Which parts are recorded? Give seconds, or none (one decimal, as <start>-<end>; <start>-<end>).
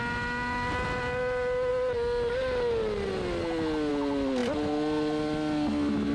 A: 0.0-6.1